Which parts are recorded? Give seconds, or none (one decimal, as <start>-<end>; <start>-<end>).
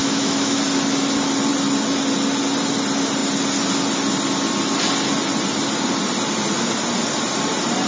0.6-7.9